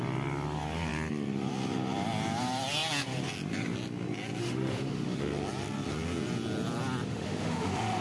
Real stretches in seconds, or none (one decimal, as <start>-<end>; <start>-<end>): 0.0-4.4; 5.2-7.1

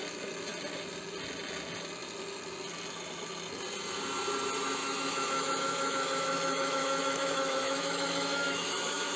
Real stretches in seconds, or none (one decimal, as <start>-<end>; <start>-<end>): 0.0-4.8

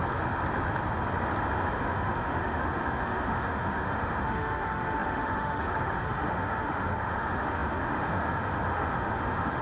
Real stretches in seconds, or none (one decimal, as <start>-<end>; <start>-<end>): 0.0-1.8